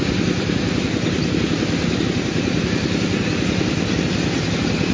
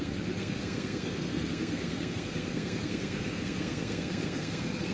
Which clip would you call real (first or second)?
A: first